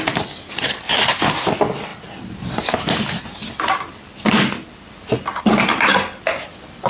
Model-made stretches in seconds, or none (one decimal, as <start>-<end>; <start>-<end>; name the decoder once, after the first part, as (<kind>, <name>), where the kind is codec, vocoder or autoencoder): none